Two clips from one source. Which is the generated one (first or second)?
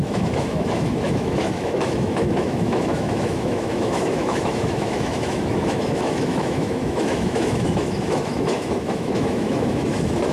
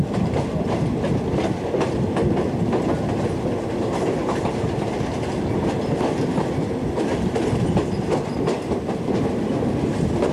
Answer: first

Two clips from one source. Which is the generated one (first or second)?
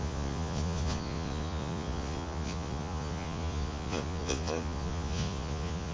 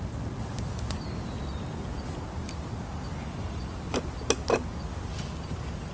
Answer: first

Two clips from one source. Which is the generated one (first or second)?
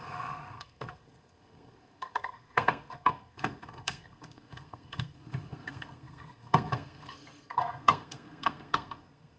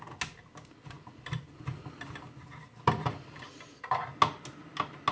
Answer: first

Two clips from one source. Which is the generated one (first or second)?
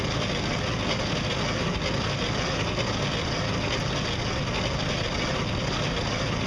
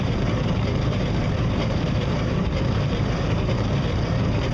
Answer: second